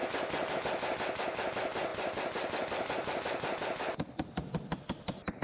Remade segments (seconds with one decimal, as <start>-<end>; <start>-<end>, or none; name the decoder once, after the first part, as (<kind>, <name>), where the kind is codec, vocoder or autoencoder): none